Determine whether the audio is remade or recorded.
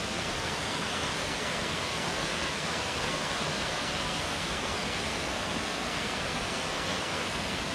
remade